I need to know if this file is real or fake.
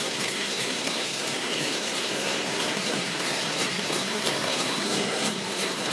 fake